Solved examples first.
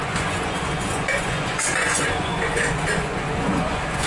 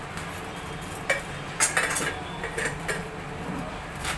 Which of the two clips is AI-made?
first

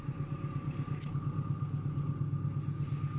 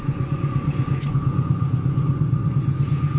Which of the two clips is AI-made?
second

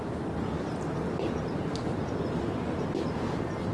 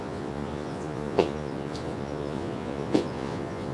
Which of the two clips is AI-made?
second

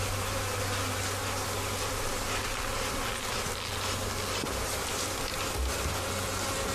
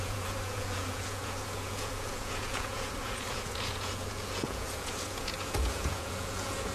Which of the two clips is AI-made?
second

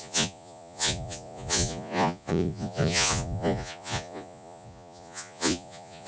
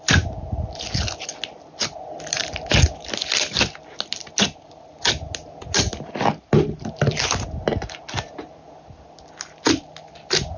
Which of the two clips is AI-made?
first